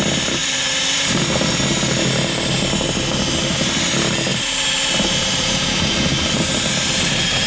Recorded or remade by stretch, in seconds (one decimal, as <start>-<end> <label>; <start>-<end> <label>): 0.0-0.4 recorded; 0.4-1.2 remade; 1.2-4.3 recorded; 4.3-5.9 remade; 5.9-7.5 recorded